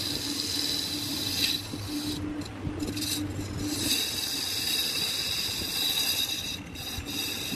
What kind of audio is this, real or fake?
real